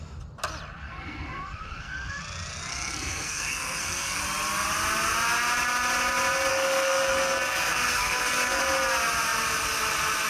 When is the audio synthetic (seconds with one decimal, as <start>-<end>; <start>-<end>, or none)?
0.8-2.2; 2.7-4.2; 6.5-8.6